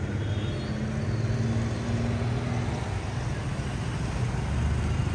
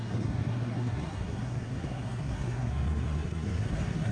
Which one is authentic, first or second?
first